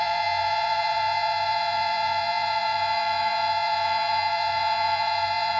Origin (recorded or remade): remade